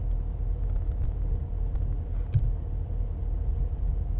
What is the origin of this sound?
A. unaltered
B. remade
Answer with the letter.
A